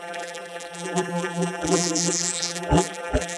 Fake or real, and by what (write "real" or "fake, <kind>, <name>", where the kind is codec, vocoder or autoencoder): fake, vocoder, BigVGAN v2